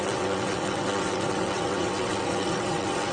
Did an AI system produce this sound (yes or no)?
yes